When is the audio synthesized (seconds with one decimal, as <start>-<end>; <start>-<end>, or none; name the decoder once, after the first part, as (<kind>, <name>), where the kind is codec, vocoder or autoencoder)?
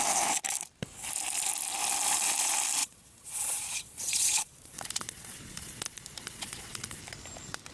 2.8-7.0 (vocoder, Vocos)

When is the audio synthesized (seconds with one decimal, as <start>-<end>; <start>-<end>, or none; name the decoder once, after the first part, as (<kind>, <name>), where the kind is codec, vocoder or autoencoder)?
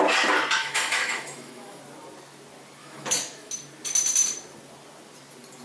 0.6-1.8 (autoencoder, DAC-VAE); 2.8-3.5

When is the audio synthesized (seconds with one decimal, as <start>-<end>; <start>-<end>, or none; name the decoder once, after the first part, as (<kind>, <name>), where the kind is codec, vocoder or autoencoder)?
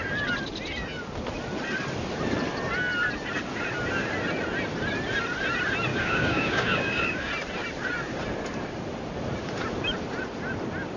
5.9-7.3 (codec, DAC)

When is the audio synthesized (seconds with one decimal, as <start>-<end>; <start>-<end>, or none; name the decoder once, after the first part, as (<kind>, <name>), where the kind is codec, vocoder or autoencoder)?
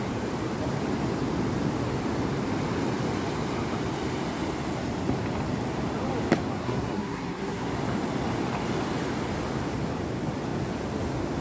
6.5-7.7 (codec, SNAC)